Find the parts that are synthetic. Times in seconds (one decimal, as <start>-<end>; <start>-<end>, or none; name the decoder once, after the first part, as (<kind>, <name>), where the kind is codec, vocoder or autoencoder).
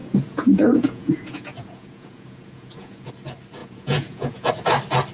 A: 0.0-3.1 (vocoder, Vocos); 3.6-4.5